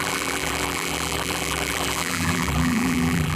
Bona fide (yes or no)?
no